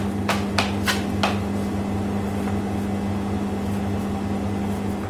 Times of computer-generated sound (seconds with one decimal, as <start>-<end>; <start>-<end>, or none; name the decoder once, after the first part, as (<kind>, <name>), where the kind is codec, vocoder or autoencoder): none